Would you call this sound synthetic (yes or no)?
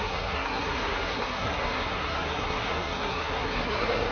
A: yes